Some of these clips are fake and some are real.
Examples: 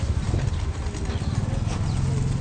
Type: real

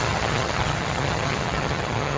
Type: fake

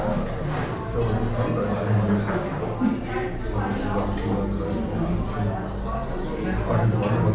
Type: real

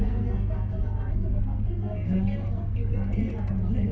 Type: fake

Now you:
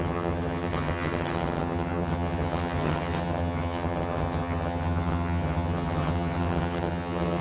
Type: fake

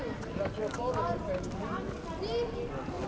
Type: real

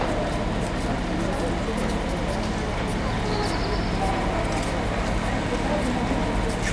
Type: real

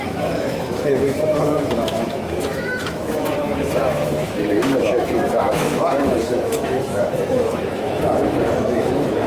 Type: fake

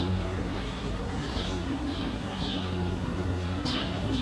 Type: fake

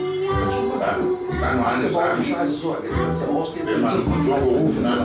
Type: real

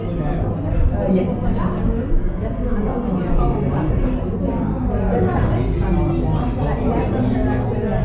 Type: real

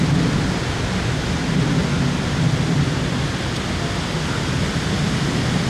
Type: real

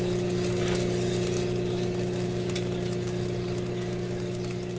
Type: real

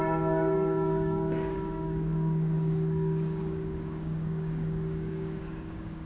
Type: fake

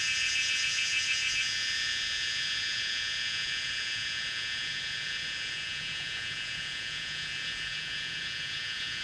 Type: fake